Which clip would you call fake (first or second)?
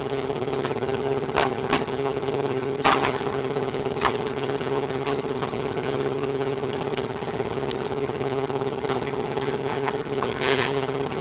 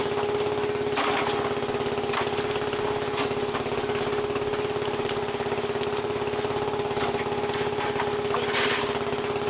first